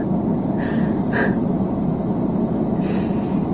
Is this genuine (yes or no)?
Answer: yes